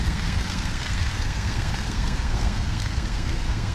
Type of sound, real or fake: fake